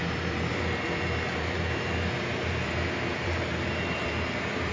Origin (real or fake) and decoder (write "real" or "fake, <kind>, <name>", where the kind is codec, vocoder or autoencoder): fake, vocoder, BigVGAN v2